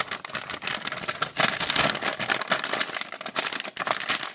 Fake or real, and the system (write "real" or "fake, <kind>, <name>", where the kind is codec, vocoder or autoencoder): real